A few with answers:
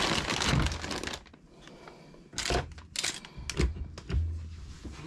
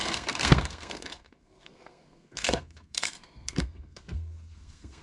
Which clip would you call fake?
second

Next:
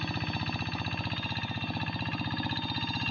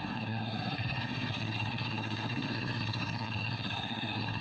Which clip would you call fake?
second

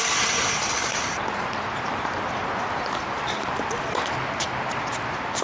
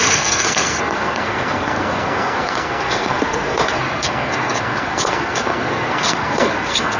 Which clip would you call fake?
second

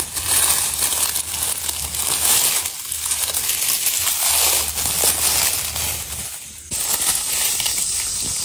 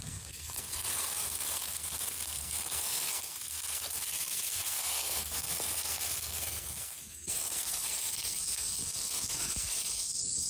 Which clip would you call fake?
second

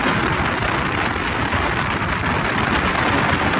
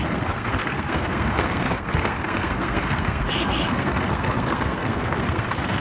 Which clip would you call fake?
second